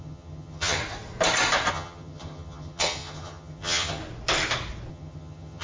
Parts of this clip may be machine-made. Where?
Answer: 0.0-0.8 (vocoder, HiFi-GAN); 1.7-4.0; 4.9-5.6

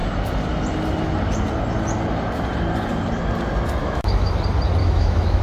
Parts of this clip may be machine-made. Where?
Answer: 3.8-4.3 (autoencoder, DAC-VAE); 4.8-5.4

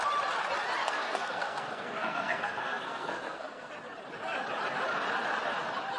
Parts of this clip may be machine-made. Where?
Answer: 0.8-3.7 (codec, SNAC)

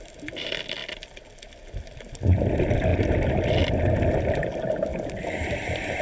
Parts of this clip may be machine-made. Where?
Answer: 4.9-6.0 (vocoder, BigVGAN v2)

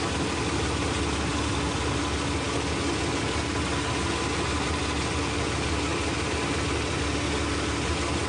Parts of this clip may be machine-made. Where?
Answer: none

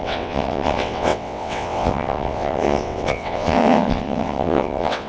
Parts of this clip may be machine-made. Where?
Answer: 0.0-5.1 (vocoder, WaveNeXt)